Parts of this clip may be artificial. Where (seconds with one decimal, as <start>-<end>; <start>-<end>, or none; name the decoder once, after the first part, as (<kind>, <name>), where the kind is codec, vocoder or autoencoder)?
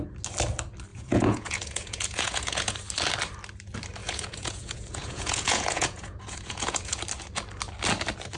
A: 0.9-2.7 (vocoder, Vocos); 4.0-7.0